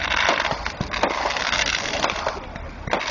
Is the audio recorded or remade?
recorded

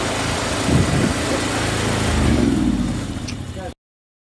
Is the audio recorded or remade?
recorded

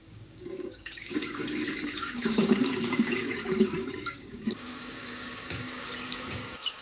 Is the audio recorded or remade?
remade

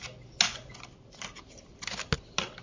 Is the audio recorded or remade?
recorded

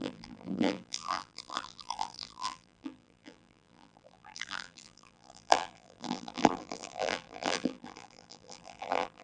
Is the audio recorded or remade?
remade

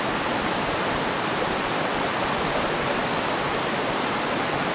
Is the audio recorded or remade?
recorded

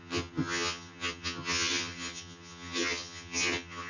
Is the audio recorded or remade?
remade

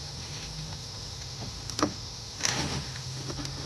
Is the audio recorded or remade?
remade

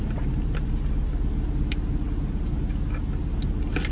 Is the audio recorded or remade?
recorded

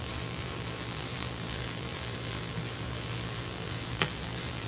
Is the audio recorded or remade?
remade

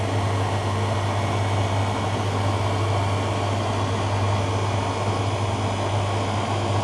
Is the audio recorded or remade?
recorded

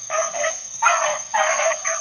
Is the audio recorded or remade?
remade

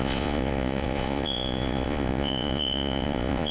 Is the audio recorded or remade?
remade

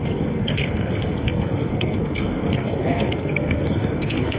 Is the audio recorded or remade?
remade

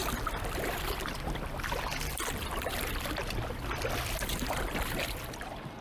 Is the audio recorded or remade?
remade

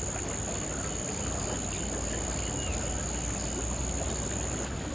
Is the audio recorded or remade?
recorded